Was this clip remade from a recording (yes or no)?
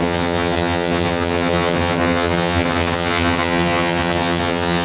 yes